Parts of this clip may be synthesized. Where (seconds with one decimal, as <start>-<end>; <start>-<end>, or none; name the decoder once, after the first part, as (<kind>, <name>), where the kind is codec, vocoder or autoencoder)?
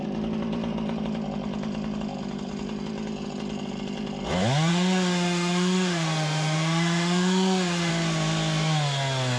4.7-7.9 (autoencoder, DAC-VAE)